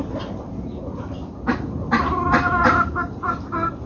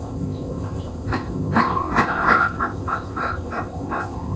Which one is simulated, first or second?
second